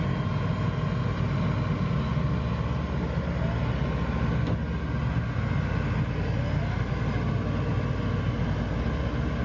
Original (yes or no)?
yes